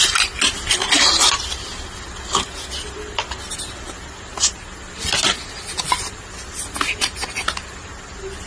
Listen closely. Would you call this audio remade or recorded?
recorded